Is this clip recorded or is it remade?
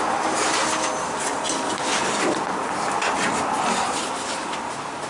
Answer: recorded